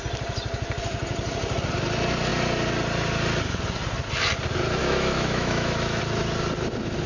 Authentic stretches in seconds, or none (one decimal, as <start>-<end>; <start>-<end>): 0.0-4.8; 6.0-7.1

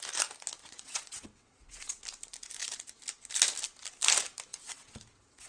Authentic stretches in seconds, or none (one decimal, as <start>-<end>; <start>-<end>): 0.0-0.6; 2.0-4.5